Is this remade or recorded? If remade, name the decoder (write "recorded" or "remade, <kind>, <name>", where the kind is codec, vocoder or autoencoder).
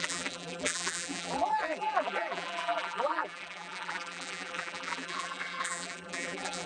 remade, vocoder, BigVGAN v2